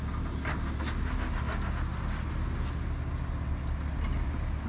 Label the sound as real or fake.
real